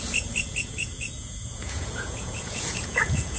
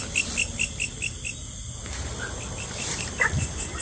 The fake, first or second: first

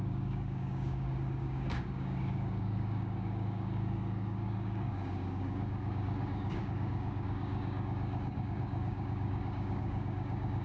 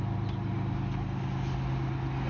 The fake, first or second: first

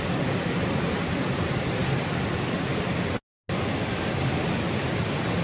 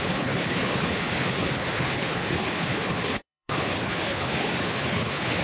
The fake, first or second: second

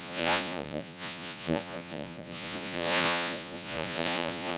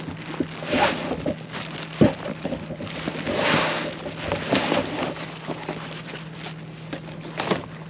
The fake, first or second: first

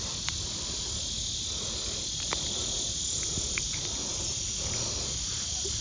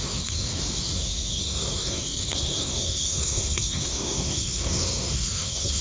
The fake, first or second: second